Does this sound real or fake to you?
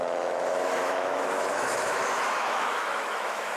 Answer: fake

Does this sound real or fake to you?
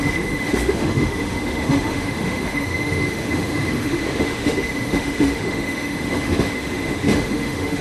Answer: fake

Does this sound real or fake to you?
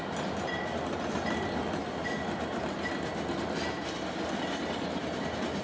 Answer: real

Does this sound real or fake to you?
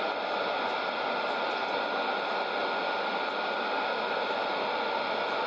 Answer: real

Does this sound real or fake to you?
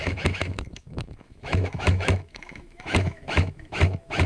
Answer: fake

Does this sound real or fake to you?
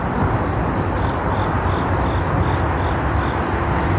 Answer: real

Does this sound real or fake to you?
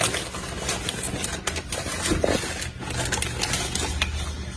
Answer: real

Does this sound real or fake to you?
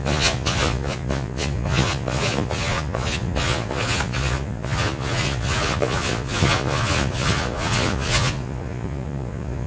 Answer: fake